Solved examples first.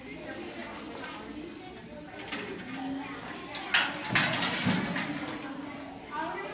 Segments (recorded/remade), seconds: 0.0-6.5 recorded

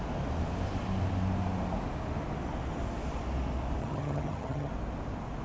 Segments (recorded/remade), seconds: 0.0-3.8 recorded; 3.8-4.7 remade; 4.7-5.4 recorded

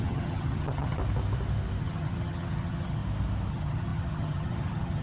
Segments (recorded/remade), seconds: 0.0-1.0 remade; 1.0-1.8 recorded; 1.8-3.0 remade; 3.0-3.5 recorded; 3.5-5.0 remade